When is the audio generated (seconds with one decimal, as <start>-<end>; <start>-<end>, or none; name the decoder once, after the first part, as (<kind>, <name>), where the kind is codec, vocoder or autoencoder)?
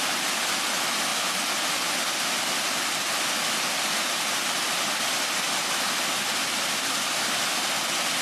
none